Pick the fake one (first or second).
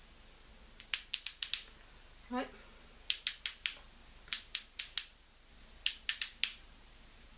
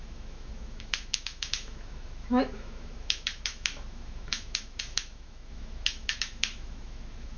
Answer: second